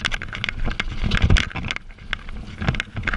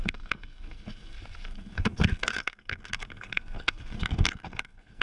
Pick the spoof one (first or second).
second